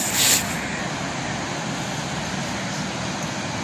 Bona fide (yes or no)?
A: yes